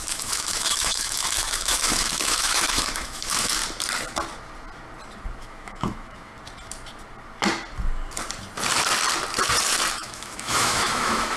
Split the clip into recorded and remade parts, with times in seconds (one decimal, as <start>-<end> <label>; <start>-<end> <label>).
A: 0.0-3.6 remade; 3.6-5.4 recorded; 5.4-6.3 remade; 6.3-9.9 recorded; 9.9-11.4 remade